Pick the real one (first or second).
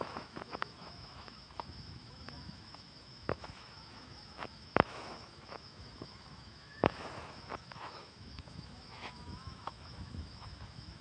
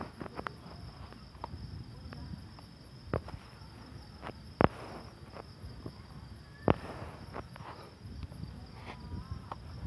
second